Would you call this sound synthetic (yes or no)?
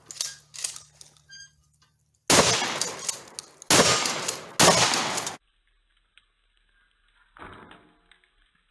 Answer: no